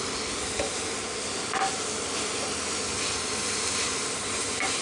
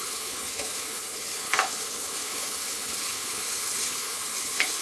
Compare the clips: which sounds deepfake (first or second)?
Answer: second